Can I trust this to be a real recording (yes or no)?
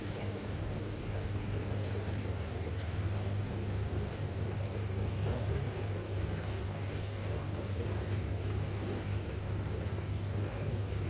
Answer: no